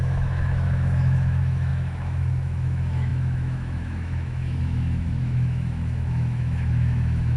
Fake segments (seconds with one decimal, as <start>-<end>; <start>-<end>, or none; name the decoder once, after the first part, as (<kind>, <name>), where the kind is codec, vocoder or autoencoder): 0.0-7.4 (autoencoder, DAC-VAE)